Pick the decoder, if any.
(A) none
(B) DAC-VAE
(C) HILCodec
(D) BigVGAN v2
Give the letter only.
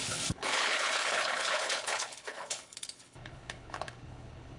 C